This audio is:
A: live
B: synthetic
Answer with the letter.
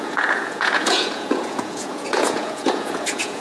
B